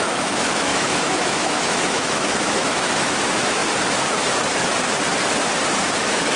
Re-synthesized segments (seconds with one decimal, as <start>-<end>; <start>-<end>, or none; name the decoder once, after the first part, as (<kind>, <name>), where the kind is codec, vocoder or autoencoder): 0.0-3.6 (autoencoder, DAC-VAE); 6.0-6.4